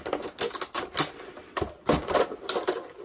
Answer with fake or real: real